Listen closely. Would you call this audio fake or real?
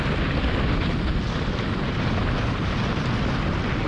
real